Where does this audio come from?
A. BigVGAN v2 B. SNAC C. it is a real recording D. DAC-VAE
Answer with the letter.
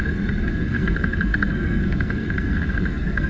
B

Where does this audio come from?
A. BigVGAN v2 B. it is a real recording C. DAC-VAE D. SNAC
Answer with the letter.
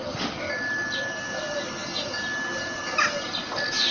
B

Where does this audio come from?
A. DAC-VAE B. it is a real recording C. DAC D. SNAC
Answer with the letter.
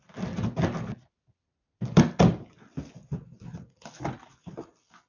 B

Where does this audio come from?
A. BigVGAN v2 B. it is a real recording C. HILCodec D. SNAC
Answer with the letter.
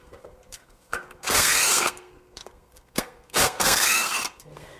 D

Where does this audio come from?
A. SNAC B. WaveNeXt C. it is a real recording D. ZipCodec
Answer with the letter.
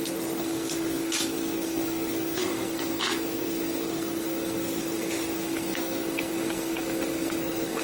A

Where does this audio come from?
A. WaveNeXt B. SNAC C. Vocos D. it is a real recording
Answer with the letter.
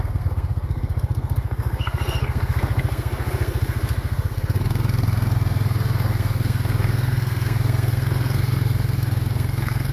B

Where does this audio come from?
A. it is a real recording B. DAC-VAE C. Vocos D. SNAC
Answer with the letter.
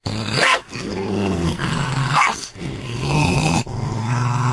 D